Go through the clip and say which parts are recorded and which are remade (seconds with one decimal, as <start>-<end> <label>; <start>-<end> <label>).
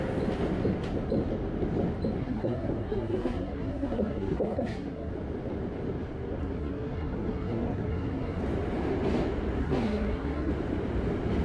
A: 0.0-2.2 recorded; 2.2-5.1 remade; 5.1-6.4 recorded; 6.4-8.4 remade; 8.4-9.6 recorded; 9.6-10.5 remade; 10.5-11.4 recorded